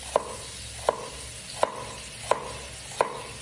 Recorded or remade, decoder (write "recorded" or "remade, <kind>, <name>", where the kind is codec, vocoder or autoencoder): recorded